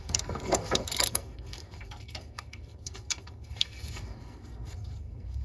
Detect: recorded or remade remade